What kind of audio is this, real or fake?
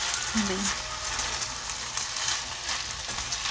real